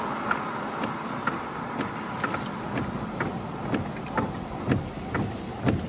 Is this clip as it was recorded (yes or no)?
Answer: yes